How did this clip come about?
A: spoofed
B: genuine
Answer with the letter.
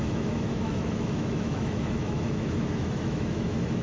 A